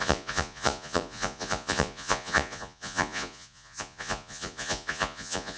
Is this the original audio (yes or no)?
no